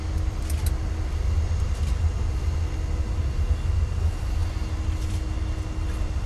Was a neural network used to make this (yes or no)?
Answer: no